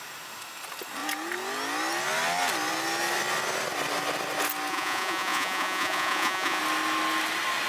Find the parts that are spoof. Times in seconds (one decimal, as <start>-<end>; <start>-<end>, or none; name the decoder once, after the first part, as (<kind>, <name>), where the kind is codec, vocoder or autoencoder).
4.7-6.6 (vocoder, Vocos)